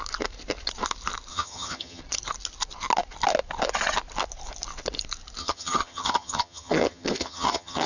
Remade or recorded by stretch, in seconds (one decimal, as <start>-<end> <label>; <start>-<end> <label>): 0.0-1.3 recorded; 1.3-2.0 remade; 2.0-5.4 recorded; 5.4-7.9 remade